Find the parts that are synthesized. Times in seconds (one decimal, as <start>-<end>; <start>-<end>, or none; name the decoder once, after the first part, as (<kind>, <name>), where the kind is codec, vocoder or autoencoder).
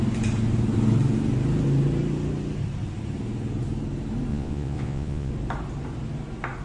4.3-5.3 (vocoder, Vocos)